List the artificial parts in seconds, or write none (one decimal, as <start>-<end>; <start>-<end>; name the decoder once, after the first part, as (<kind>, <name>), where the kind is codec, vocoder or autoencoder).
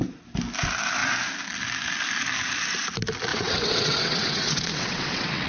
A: 3.3-5.5 (vocoder, WaveNeXt)